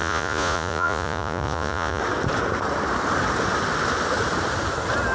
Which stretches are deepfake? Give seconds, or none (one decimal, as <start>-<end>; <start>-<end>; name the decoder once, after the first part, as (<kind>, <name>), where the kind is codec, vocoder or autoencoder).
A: 0.0-2.0 (vocoder, Vocos)